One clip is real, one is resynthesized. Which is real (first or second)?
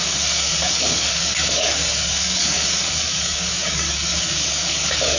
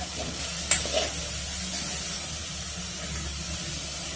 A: second